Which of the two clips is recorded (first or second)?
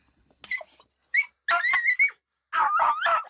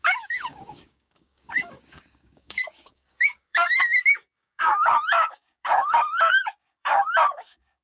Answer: first